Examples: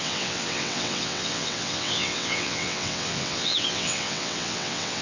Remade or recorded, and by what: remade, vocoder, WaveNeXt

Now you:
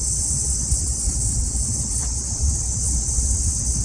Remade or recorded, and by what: remade, vocoder, WaveNeXt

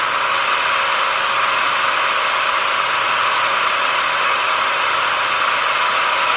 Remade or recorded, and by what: recorded